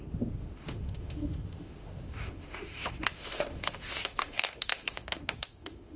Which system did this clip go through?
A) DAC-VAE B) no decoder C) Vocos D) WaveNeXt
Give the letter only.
A